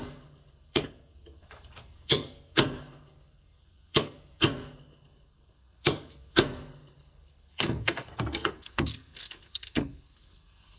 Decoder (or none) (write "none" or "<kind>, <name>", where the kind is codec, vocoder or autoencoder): codec, SNAC